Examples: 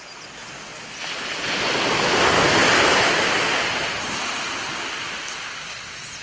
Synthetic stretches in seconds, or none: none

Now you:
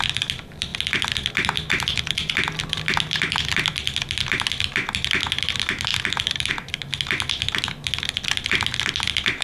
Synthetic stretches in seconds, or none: none

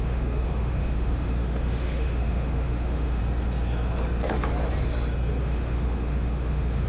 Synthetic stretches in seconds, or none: 0.0-3.2 (autoencoder, DAC-VAE); 5.4-6.9

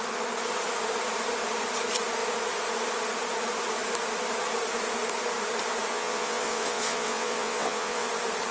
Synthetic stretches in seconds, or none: 5.9-8.1 (vocoder, WaveNeXt)